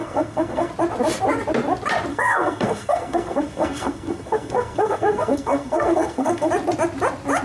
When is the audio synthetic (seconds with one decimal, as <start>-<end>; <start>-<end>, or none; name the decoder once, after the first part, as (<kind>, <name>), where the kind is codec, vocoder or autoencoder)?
0.0-0.7 (codec, SNAC); 2.1-6.5

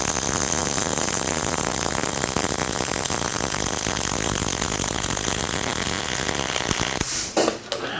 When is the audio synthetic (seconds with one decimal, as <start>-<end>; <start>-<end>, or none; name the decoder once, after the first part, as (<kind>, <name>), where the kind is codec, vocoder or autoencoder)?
0.6-1.9 (vocoder, BigVGAN v2)

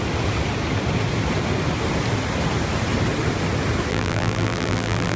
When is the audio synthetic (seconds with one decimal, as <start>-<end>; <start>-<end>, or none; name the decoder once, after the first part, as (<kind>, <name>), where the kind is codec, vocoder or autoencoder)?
3.9-5.2 (vocoder, BigVGAN v2)

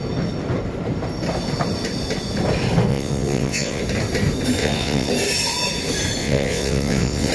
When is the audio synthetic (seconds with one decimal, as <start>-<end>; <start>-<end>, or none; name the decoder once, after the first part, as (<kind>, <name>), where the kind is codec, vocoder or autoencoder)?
2.9-3.8 (vocoder, WaveNeXt); 4.6-5.1; 6.2-7.3